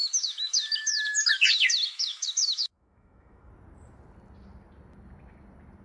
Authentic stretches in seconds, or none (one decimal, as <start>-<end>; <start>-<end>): 3.5-5.8